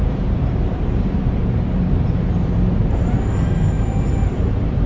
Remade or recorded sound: remade